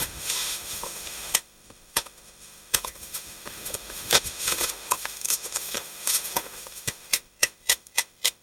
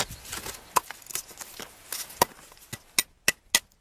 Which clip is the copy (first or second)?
first